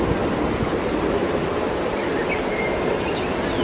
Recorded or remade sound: recorded